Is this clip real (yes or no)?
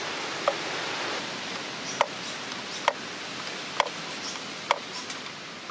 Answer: yes